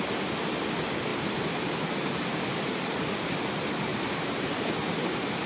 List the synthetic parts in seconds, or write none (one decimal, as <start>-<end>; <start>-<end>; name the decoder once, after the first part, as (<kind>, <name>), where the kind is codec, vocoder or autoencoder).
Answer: 1.1-3.0 (vocoder, BigVGAN v2); 3.9-4.6